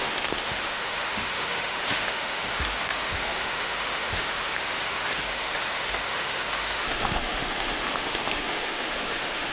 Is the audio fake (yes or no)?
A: yes